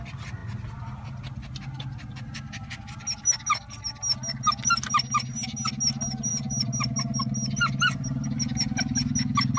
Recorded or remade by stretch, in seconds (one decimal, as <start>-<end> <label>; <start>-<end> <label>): 0.0-9.6 recorded